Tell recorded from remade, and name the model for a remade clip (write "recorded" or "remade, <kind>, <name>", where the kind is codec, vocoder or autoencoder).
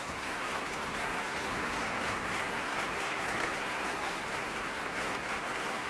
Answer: remade, codec, SNAC